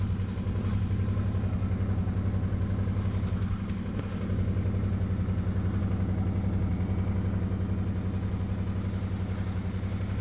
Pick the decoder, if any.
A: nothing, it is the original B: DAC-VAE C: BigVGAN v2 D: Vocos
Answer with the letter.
A